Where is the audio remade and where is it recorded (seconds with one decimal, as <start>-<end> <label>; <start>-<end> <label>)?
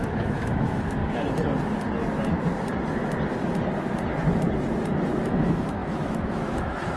0.0-1.0 remade; 1.0-5.2 recorded; 5.2-7.0 remade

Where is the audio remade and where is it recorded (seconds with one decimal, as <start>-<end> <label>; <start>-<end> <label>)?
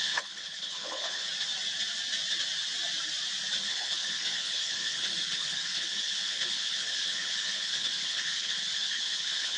0.0-1.3 remade; 1.3-3.6 recorded; 3.6-9.6 remade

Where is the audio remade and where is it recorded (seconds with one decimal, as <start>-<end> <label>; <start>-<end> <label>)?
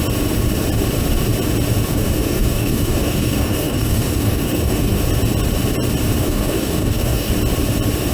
0.0-1.9 recorded; 1.9-5.0 remade; 5.0-6.2 recorded; 6.2-7.3 remade; 7.3-8.1 recorded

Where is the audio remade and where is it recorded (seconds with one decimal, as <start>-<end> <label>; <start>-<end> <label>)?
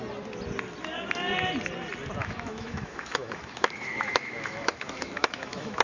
0.0-2.2 recorded; 2.2-5.8 remade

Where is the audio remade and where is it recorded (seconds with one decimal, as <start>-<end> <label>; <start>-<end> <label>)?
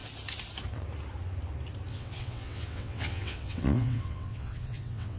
0.0-1.9 recorded; 1.9-5.2 remade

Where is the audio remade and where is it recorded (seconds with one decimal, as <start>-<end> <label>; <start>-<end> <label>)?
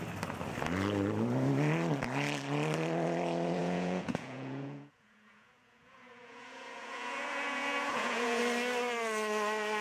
0.0-3.6 recorded; 3.6-8.4 remade; 8.4-9.8 recorded